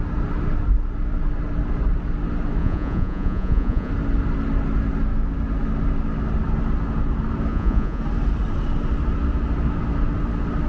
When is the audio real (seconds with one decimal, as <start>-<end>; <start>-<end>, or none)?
0.0-2.6; 3.9-7.5; 8.0-10.7